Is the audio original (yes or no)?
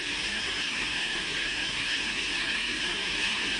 no